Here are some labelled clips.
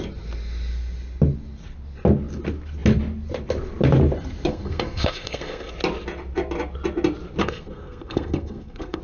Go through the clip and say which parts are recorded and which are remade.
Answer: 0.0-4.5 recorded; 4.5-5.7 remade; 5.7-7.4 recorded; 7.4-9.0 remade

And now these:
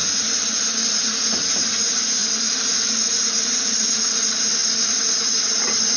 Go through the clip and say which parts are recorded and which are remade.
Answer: 0.0-6.0 recorded

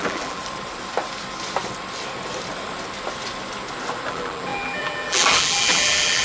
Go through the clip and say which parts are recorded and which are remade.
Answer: 0.0-0.4 remade; 0.4-4.1 recorded; 4.1-6.2 remade

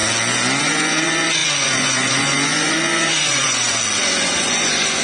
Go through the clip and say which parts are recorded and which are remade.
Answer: 0.0-0.6 recorded; 0.6-5.0 remade